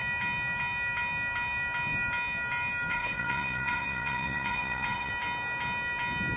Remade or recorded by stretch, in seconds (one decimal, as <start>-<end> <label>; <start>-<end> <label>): 0.0-2.9 recorded; 2.9-5.1 remade; 5.1-6.4 recorded